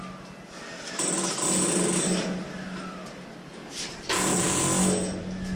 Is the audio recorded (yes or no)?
yes